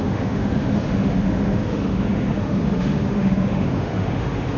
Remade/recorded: remade